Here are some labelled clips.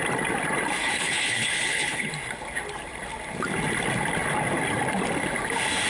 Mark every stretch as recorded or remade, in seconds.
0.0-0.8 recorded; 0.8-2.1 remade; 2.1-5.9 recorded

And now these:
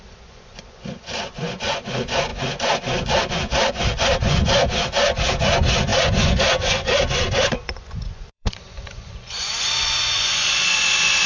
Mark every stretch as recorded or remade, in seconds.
0.0-11.3 remade

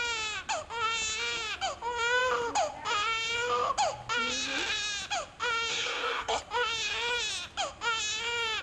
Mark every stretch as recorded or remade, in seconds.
0.0-5.7 recorded; 5.7-6.4 remade; 6.4-8.6 recorded

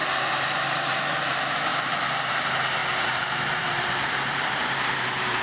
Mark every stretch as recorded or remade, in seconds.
0.0-1.2 remade; 1.2-1.7 recorded; 1.7-2.3 remade; 2.3-2.8 recorded; 2.8-5.4 remade

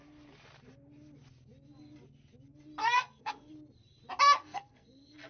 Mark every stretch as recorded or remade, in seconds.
0.0-2.8 recorded; 2.8-3.5 remade; 3.5-4.4 recorded; 4.4-5.3 remade

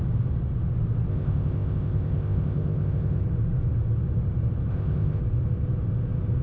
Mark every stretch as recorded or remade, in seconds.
0.0-1.1 recorded; 1.1-3.2 remade; 3.2-4.7 recorded; 4.7-5.2 remade; 5.2-6.4 recorded

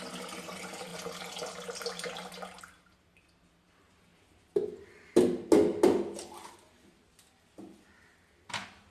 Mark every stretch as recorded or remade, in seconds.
0.0-8.9 recorded

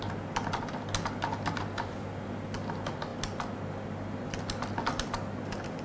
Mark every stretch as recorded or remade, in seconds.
0.0-5.8 recorded